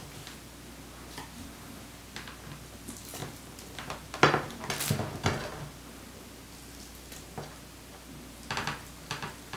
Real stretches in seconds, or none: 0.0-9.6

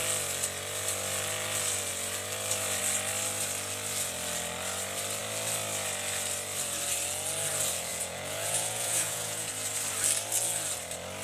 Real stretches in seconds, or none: 0.0-7.9; 9.5-11.2

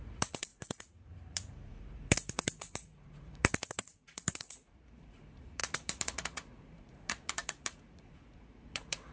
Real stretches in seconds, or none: none

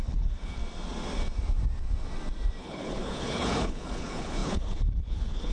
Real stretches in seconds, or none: 0.6-2.6

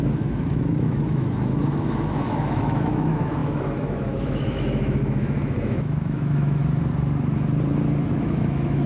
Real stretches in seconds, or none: 6.6-8.2

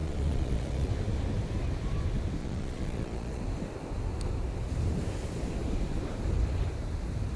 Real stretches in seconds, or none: 0.9-2.4; 3.4-7.4